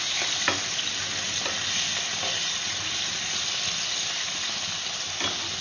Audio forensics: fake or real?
real